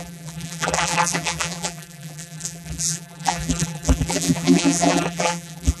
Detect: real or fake fake